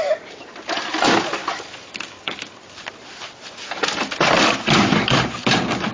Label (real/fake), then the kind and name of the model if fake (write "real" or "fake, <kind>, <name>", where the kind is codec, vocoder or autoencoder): real